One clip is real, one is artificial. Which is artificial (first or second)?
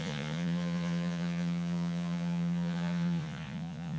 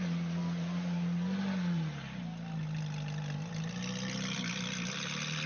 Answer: first